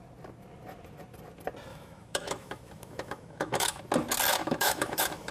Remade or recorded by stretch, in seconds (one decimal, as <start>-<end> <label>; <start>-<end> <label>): 0.0-1.7 recorded; 1.7-3.8 remade; 3.8-4.3 recorded; 4.3-5.3 remade